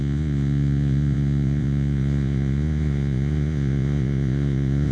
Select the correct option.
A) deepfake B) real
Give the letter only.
A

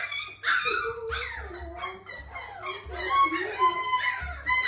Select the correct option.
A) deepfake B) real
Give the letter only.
B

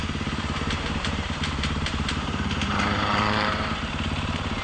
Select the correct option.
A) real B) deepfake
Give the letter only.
B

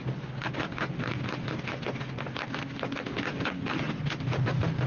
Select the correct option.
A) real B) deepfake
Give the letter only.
A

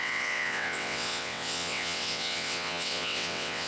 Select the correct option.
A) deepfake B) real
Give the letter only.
A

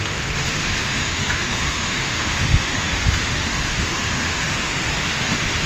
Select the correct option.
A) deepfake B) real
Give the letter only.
A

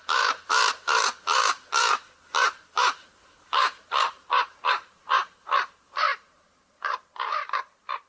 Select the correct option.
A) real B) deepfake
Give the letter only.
B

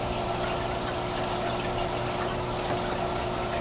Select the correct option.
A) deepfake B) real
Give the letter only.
B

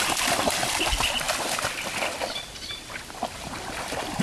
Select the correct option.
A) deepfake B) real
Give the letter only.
B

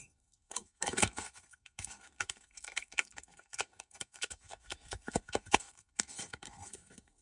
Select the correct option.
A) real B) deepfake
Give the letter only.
B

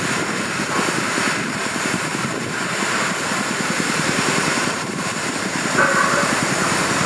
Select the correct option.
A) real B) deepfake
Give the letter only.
B